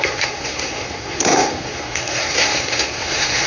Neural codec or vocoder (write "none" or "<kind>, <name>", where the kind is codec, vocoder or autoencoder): codec, SNAC